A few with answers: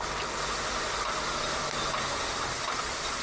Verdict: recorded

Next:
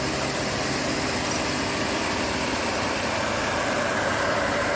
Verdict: remade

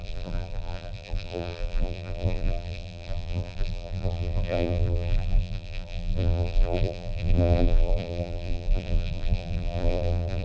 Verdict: remade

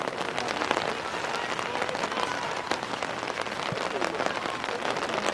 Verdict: remade